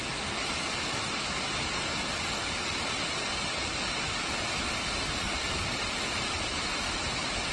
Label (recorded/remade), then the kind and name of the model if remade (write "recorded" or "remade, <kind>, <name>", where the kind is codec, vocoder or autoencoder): recorded